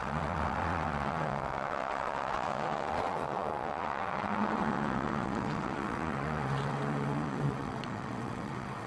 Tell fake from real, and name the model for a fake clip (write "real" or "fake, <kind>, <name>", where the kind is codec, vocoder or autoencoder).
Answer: fake, vocoder, WaveNeXt